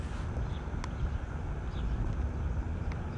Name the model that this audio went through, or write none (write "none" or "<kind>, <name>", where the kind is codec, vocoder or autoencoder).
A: none